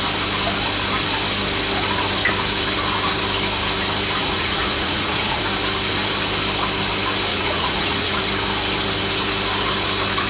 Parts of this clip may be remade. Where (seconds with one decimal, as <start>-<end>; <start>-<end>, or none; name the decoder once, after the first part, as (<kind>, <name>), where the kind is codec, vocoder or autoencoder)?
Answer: 4.2-5.4 (vocoder, Vocos); 7.3-8.2